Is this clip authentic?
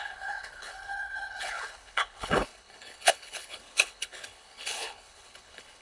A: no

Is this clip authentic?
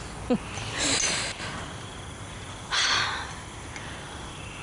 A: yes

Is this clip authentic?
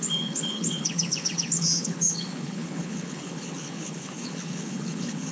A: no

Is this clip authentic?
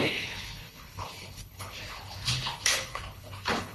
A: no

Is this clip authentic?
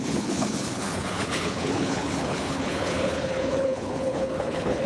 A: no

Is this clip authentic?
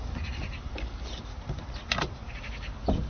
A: yes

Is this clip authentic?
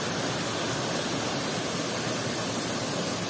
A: yes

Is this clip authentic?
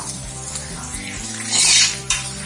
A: yes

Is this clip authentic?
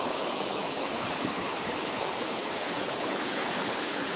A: no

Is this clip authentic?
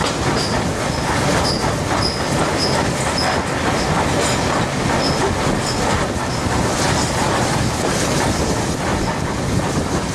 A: yes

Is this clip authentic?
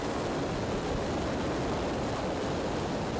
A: yes